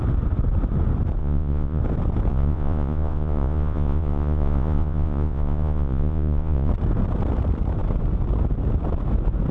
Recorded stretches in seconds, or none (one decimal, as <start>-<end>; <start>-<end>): 0.0-1.2; 1.8-2.3; 6.7-9.5